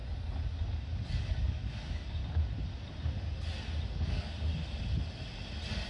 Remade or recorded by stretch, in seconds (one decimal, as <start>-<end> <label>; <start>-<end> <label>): 0.0-1.2 recorded; 1.2-2.2 remade; 2.2-3.9 recorded; 3.9-4.5 remade; 4.5-5.9 recorded